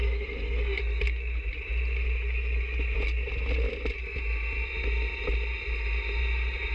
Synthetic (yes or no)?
no